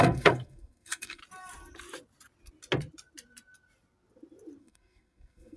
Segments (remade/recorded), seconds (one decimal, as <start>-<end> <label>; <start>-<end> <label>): 0.0-1.2 remade; 1.2-4.6 recorded; 4.6-5.6 remade